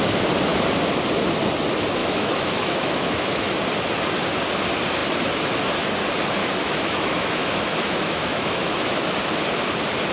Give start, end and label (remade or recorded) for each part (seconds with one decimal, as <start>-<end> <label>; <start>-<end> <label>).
0.0-2.0 recorded; 2.0-3.5 remade; 3.5-6.4 recorded; 6.4-9.2 remade; 9.2-10.1 recorded